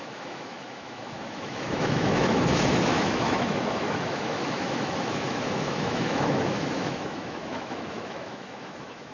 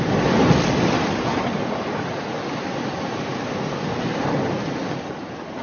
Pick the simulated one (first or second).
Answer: first